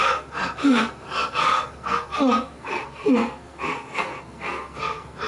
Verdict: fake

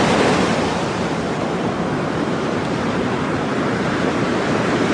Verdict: fake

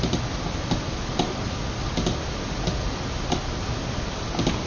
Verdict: real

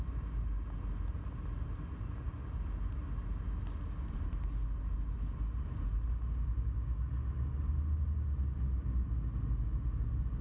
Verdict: real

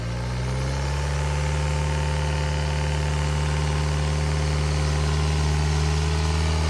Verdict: real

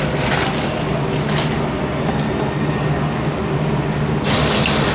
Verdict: real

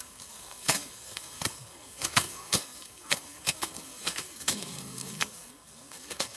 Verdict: fake